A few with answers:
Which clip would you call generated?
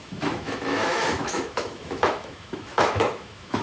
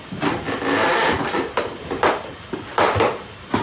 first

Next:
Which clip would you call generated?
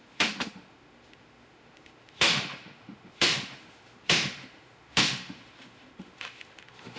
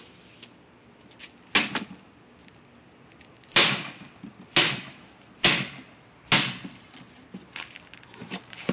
first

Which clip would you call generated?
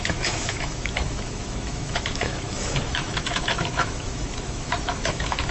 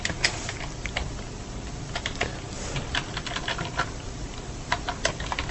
first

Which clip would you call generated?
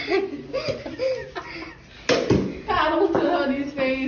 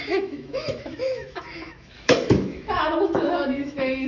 second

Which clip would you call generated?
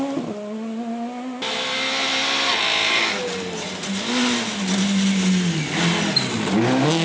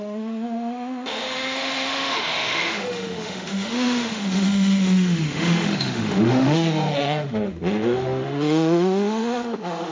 second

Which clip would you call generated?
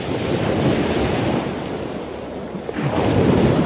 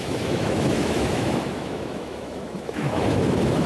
second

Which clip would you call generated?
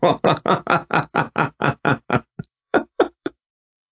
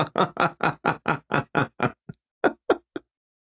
first